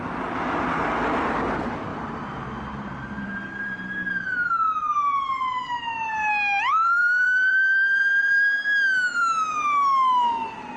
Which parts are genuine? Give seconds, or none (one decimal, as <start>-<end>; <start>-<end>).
0.0-1.9; 4.5-6.7; 9.4-10.8

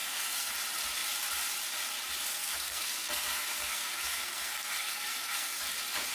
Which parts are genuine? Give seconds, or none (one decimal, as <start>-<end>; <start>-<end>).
0.5-2.3; 5.6-6.1

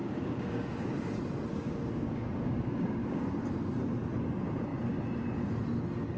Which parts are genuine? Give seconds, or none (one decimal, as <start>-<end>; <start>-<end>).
0.9-1.5; 3.2-6.2

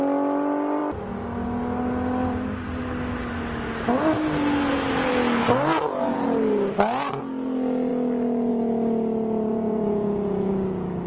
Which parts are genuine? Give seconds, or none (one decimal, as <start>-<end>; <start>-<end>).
0.0-9.5; 10.5-11.1

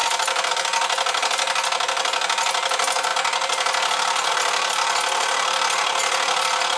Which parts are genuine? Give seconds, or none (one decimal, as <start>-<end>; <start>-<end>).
0.0-6.8

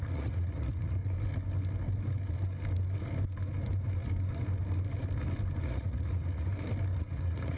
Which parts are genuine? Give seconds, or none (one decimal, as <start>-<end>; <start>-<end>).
1.0-5.6; 6.5-7.0

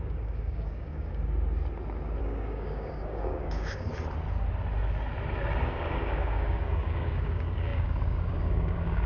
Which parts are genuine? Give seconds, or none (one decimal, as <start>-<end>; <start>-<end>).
1.1-2.2; 3.9-5.6

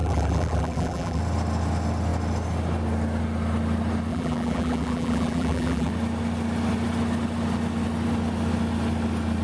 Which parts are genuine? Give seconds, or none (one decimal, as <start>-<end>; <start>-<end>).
1.2-4.1; 5.9-9.4